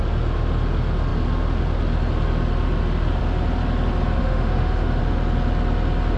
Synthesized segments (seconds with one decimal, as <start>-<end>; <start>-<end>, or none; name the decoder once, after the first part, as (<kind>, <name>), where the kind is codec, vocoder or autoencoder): 4.2-5.0 (autoencoder, DAC-VAE)